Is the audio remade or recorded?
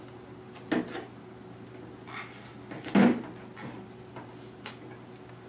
recorded